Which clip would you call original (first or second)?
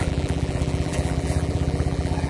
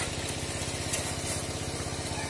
second